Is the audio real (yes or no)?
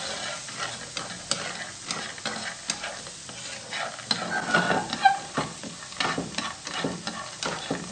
yes